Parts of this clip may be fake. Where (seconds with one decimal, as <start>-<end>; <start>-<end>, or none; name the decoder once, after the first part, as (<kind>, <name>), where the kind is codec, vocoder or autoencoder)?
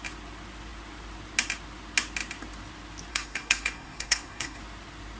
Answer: 3.1-4.6 (codec, SNAC)